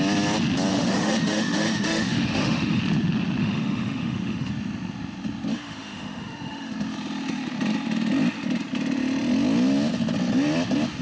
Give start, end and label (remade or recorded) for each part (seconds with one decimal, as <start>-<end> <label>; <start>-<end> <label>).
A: 0.0-0.7 recorded; 0.7-2.8 remade; 2.8-3.4 recorded; 3.4-4.5 remade; 4.5-5.5 recorded; 5.5-6.7 remade; 6.7-11.0 recorded